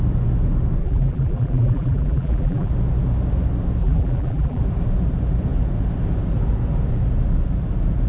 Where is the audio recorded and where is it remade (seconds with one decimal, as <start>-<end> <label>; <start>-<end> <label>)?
0.0-0.8 recorded; 0.8-2.7 remade; 2.7-3.8 recorded; 3.8-4.6 remade; 4.6-8.1 recorded